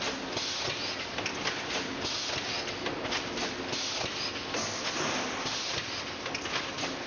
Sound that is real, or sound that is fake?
real